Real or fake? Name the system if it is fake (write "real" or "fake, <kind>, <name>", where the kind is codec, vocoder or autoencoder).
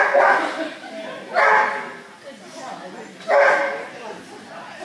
real